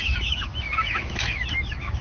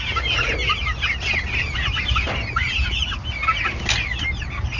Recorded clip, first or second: second